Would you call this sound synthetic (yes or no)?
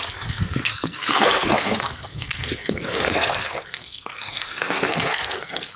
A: yes